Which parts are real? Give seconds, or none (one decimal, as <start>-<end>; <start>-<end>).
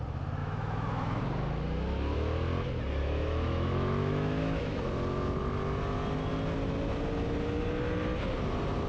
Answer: 0.0-0.4; 1.2-3.0; 4.9-8.9